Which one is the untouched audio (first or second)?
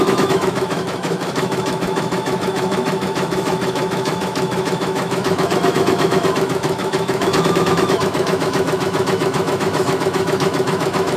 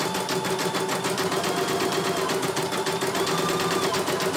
second